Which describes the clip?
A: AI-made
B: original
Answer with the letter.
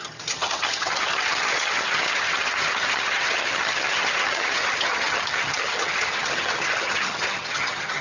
A